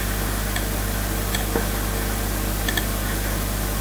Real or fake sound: real